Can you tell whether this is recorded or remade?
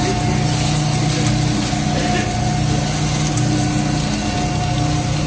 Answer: recorded